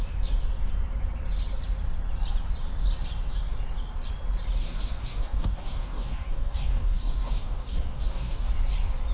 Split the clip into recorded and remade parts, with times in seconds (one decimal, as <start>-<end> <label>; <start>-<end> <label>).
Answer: 0.0-4.6 recorded; 4.6-8.5 remade; 8.5-9.1 recorded

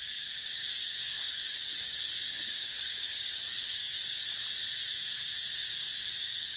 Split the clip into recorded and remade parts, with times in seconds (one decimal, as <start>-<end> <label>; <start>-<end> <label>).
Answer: 0.0-4.0 remade; 4.0-6.0 recorded; 6.0-6.6 remade

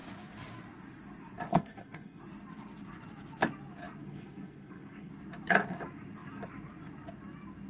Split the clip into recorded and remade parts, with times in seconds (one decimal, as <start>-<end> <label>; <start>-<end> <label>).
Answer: 0.0-1.5 recorded; 1.5-2.2 remade; 2.2-4.0 recorded; 4.0-5.1 remade; 5.1-7.7 recorded

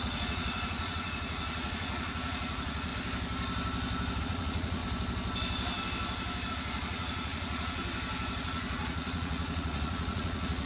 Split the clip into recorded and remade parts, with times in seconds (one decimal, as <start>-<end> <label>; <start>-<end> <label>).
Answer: 0.0-2.9 remade; 2.9-4.2 recorded; 4.2-4.8 remade; 4.8-6.5 recorded; 6.5-7.8 remade; 7.8-8.4 recorded; 8.4-10.7 remade